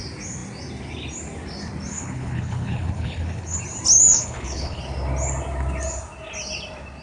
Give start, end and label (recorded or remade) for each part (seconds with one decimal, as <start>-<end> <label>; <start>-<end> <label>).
0.0-1.9 recorded; 1.9-3.6 remade; 3.6-4.1 recorded; 4.1-4.8 remade; 4.8-7.0 recorded

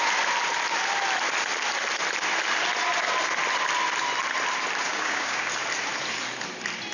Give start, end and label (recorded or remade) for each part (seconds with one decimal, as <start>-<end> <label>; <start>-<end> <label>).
0.0-4.9 recorded; 4.9-5.5 remade; 5.5-6.9 recorded

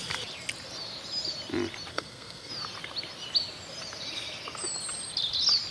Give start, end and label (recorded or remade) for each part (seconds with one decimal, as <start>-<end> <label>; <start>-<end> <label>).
0.0-1.9 recorded; 1.9-2.5 remade; 2.5-5.7 recorded

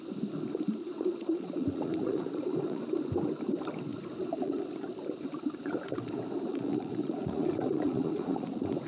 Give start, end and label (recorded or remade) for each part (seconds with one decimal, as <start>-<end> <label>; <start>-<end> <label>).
0.0-0.8 recorded; 0.8-2.8 remade; 2.8-3.9 recorded; 3.9-4.6 remade; 4.6-6.5 recorded; 6.5-8.9 remade

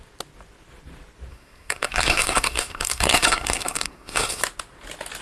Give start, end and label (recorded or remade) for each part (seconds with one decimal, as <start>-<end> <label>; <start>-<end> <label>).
0.0-1.3 recorded; 1.3-4.4 remade; 4.4-5.2 recorded

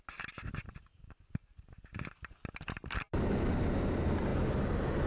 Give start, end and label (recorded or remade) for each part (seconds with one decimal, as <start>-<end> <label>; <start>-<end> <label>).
0.0-5.1 recorded

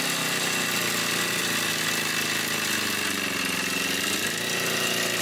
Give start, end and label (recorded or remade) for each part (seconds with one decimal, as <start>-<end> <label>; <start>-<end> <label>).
0.0-5.2 recorded

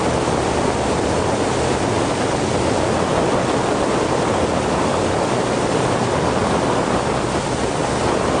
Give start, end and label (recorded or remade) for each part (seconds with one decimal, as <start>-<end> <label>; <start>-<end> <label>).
0.0-8.4 recorded